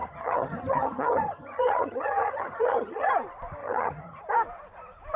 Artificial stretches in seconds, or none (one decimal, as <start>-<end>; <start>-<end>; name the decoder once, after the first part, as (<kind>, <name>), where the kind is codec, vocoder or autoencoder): 0.0-3.1 (vocoder, HiFi-GAN); 3.6-4.2